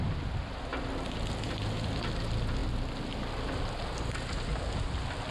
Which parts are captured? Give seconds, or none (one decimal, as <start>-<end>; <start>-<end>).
0.0-5.3